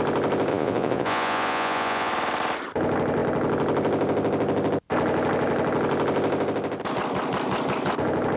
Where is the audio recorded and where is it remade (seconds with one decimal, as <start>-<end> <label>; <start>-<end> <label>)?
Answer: 0.0-0.5 recorded; 0.5-2.1 remade; 2.1-8.4 recorded